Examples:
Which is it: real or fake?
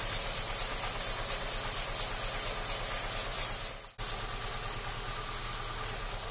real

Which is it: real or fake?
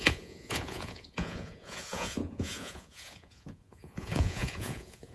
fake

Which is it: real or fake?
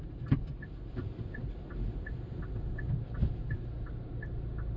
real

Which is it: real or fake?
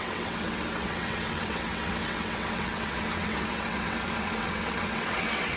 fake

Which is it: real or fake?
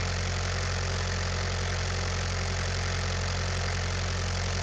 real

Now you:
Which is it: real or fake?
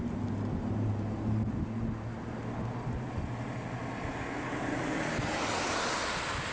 real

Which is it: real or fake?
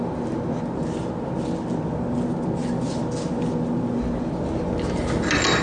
real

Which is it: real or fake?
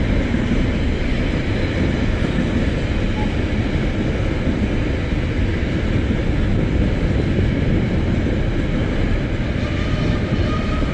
real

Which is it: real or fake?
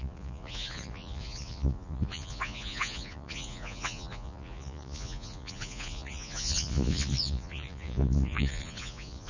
fake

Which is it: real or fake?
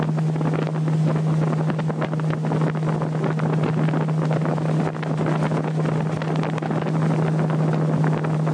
real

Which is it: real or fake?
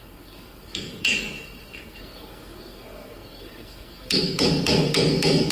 fake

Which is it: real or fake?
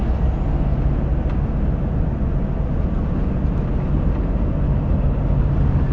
real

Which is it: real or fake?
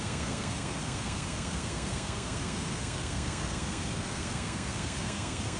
fake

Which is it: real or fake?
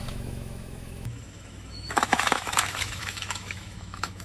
fake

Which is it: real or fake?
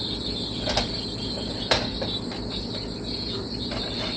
real